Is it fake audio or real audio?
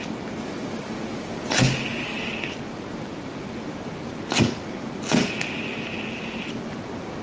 real